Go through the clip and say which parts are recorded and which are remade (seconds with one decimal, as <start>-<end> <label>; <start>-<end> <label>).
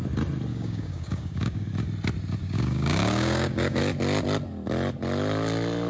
0.0-0.5 recorded; 0.5-1.7 remade; 1.7-2.4 recorded; 2.4-3.8 remade; 3.8-5.9 recorded